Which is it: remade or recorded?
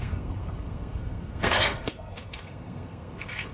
remade